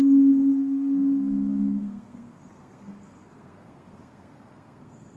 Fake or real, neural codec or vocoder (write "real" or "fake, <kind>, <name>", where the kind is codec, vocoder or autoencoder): fake, codec, SNAC